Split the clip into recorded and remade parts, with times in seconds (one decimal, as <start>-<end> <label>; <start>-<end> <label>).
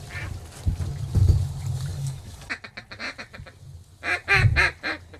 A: 0.0-1.9 recorded; 1.9-2.5 remade; 2.5-5.2 recorded